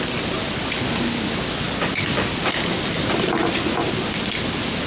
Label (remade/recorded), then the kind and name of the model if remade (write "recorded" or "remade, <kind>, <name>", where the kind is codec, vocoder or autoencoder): recorded